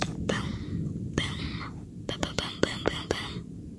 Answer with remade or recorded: recorded